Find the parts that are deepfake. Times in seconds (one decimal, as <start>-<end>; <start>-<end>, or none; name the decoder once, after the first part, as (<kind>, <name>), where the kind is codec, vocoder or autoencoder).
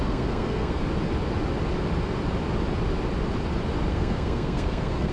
0.0-0.8 (codec, SNAC); 3.9-5.1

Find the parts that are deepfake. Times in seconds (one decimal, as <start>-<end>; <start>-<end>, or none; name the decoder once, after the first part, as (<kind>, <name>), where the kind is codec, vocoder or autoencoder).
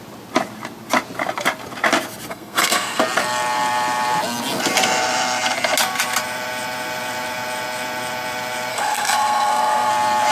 2.3-3.0 (codec, SNAC); 8.7-9.9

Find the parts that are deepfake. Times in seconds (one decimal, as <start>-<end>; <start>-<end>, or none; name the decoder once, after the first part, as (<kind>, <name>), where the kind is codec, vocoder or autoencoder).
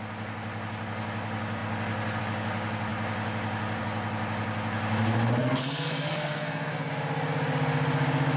5.4-6.9 (codec, SNAC)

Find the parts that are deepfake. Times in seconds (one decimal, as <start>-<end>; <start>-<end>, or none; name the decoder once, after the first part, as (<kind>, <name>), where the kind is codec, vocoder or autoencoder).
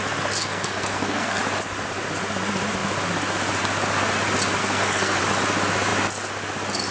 0.4-1.4 (codec, SNAC); 4.6-5.2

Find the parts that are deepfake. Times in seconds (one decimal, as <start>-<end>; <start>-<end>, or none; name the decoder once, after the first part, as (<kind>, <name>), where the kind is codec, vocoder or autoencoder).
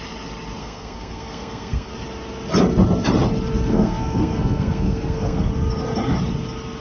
0.6-1.9 (codec, SNAC); 3.7-5.5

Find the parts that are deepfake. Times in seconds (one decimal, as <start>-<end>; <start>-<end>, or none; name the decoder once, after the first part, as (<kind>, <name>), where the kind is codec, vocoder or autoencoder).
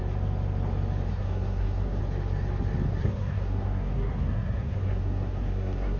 1.1-2.0 (codec, SNAC); 3.0-6.0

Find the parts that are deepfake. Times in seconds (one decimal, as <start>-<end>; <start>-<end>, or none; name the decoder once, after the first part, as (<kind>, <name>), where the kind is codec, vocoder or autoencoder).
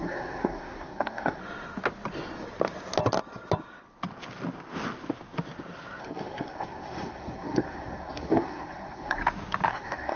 0.0-1.4 (codec, SNAC); 6.0-9.2; 9.7-10.2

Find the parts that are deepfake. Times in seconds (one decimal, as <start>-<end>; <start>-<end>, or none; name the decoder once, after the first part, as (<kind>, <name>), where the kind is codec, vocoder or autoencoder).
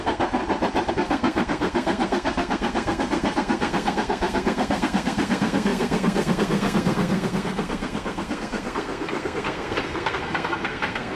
0.0-0.4 (codec, SNAC); 0.9-11.2